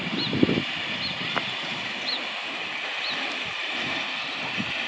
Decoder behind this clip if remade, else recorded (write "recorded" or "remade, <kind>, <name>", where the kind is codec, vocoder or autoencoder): remade, vocoder, BigVGAN v2